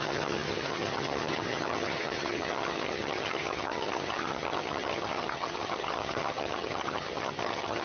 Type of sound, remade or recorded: remade